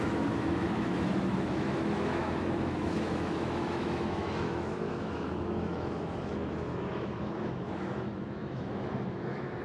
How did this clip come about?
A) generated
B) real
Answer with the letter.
A